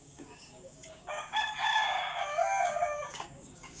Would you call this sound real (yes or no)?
no